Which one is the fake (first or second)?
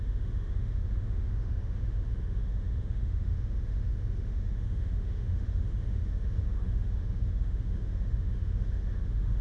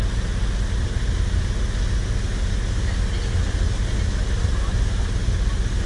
first